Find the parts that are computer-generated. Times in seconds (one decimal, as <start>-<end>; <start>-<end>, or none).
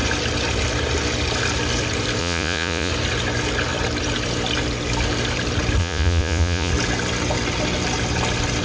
2.2-2.9; 5.8-6.7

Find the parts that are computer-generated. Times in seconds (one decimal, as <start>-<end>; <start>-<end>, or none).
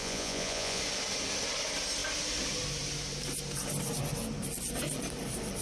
0.0-0.8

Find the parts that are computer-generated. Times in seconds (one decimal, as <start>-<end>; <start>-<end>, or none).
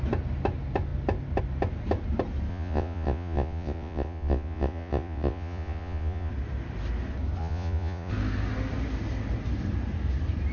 2.5-6.3; 7.4-8.1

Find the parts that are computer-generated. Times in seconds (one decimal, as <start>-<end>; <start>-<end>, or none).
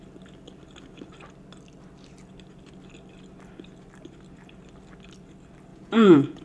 5.7-6.4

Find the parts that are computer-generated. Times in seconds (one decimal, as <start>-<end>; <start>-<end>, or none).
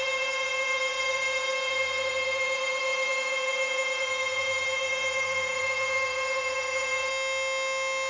0.0-7.1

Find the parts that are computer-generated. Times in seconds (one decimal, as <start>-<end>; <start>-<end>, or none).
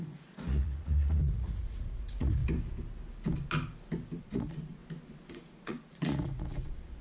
0.0-2.4; 4.2-4.8; 5.3-7.0